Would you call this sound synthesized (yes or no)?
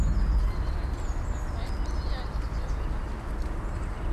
no